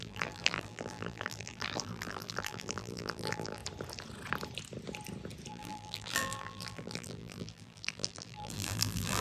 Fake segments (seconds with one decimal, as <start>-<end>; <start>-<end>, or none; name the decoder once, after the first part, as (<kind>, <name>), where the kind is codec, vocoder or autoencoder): 0.0-3.6 (vocoder, BigVGAN v2); 5.5-9.2